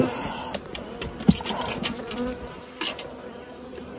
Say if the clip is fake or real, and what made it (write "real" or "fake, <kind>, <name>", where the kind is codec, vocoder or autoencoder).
real